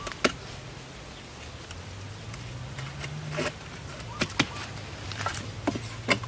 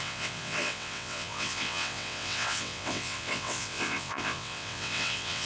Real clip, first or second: first